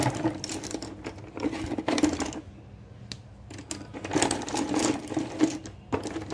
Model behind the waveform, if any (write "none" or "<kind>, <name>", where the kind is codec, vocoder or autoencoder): none